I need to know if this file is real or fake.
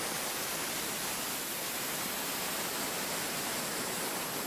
real